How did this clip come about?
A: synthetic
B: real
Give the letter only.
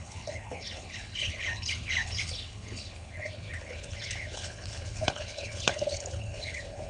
A